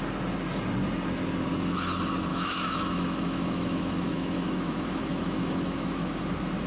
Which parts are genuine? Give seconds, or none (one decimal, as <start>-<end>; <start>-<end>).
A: 0.0-2.3; 6.3-6.7